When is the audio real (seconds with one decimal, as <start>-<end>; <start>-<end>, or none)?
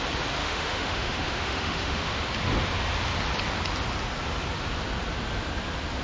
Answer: 0.0-0.4; 2.2-6.0